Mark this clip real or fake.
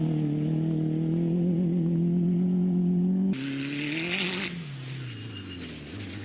real